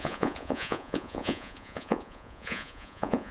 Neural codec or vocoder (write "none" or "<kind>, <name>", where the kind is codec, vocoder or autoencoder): vocoder, Vocos